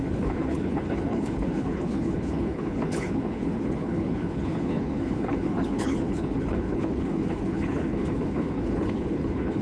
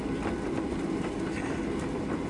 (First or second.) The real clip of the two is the second